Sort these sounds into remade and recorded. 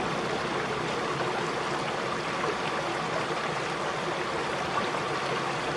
recorded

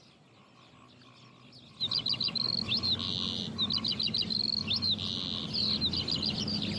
recorded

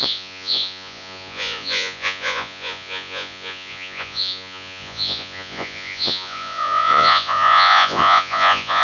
remade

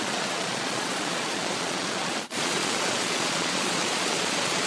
remade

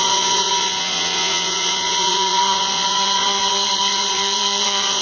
remade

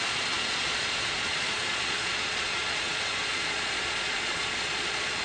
remade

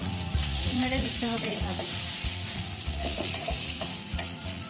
remade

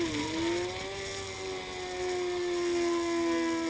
recorded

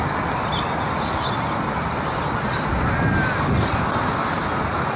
recorded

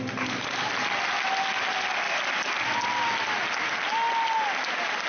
recorded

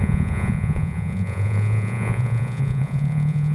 remade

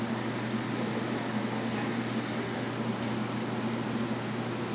recorded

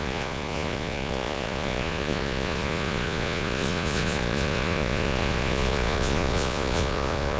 remade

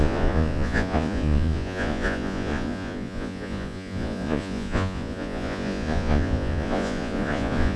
remade